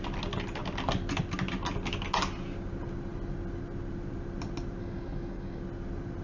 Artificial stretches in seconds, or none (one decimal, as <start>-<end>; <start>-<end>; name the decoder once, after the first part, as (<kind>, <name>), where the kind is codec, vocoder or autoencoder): 4.8-5.6 (codec, DAC)